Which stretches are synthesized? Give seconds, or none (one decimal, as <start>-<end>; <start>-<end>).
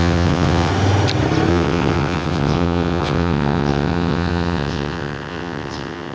0.0-0.7; 1.5-6.1